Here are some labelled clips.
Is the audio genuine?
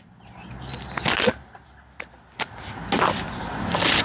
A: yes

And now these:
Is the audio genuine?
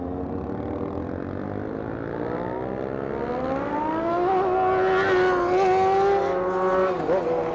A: yes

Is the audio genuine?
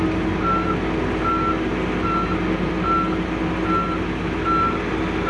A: yes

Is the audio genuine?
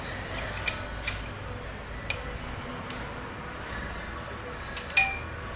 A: yes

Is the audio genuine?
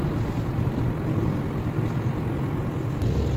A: yes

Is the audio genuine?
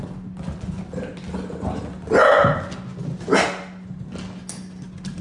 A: yes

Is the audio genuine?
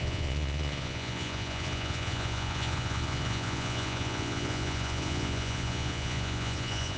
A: no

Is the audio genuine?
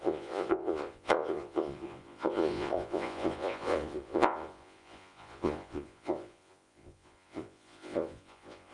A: no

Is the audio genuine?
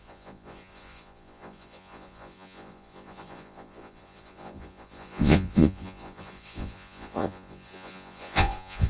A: no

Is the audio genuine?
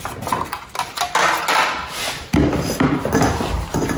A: yes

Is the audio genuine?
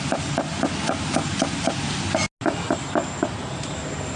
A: yes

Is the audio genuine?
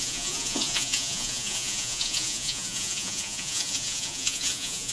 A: no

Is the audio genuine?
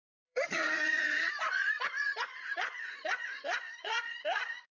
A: no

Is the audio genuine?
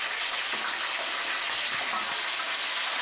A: yes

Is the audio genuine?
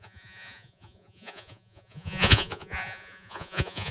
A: no